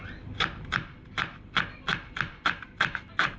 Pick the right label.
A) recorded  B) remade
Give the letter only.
A